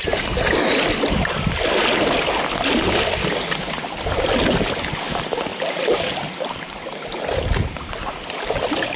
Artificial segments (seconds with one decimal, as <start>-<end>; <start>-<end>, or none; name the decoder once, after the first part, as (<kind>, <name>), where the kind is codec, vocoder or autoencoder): none